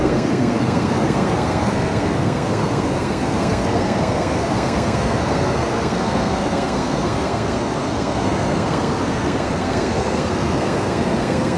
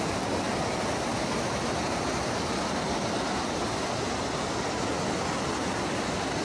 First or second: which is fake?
first